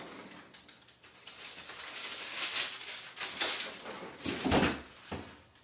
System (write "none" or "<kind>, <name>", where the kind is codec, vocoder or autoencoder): none